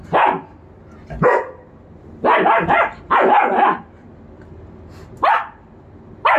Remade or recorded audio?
recorded